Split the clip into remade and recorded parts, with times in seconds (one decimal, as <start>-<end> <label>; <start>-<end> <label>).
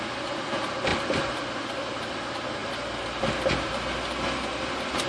0.0-5.1 recorded